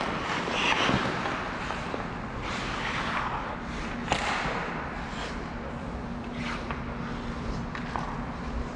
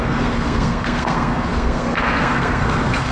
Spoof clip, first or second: second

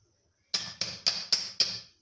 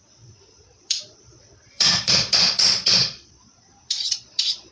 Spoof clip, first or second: second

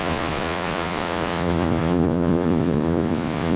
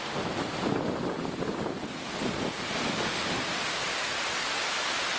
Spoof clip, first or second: first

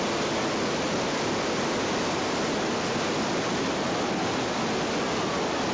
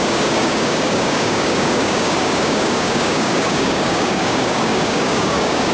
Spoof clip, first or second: second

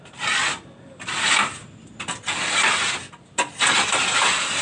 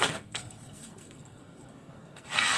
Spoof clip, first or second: second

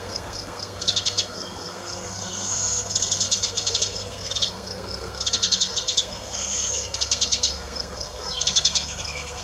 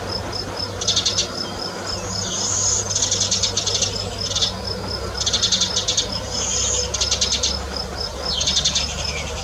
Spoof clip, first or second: first